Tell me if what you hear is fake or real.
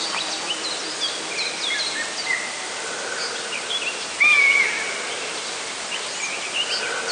real